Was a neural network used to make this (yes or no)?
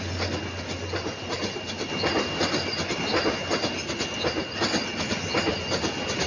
no